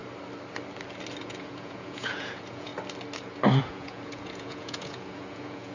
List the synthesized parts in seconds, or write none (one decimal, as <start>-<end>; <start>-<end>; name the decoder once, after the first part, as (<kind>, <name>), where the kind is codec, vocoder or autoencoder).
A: 1.2-2.7 (vocoder, Vocos); 3.6-5.7